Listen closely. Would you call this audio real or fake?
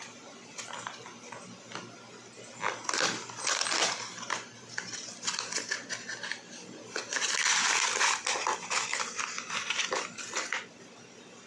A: real